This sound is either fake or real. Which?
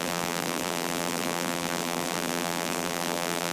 fake